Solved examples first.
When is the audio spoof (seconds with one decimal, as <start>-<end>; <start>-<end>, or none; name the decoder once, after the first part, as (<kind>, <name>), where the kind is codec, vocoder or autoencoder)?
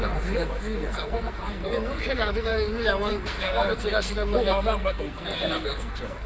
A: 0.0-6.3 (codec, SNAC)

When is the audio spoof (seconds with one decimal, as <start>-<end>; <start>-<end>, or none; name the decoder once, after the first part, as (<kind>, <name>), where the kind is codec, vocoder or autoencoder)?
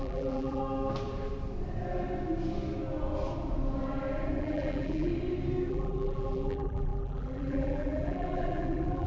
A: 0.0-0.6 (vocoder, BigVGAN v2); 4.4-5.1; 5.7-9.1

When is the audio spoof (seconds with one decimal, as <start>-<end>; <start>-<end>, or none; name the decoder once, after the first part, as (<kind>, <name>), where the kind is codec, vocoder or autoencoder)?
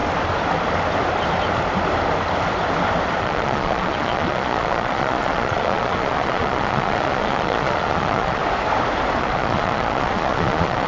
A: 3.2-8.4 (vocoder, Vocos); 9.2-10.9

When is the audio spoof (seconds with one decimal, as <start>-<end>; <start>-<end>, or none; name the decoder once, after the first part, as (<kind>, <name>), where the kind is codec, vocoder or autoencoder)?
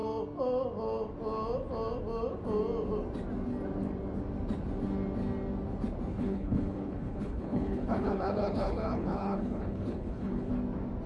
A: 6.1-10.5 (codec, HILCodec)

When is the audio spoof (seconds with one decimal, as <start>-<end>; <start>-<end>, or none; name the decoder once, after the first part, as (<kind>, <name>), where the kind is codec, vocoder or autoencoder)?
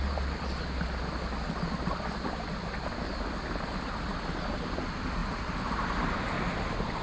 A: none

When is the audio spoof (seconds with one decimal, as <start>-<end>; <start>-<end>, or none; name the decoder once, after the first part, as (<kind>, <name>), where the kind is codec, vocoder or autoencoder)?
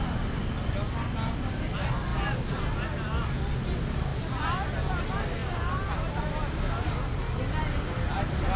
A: 2.1-2.6 (vocoder, BigVGAN v2); 4.1-5.0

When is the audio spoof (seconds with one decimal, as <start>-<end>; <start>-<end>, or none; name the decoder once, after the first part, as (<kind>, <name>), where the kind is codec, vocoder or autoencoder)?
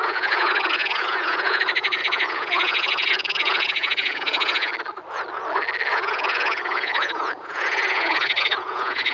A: 0.0-4.7 (vocoder, Vocos); 5.9-9.1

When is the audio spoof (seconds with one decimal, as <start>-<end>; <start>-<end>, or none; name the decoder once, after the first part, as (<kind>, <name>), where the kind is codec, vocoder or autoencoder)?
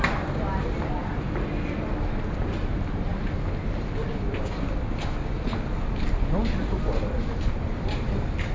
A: none